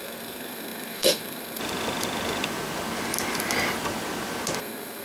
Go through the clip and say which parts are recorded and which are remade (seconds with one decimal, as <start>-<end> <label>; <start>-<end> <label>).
0.0-1.6 remade; 1.6-4.6 recorded; 4.6-5.0 remade